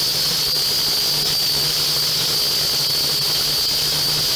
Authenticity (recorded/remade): recorded